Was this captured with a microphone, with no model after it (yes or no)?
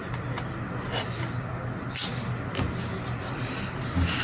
yes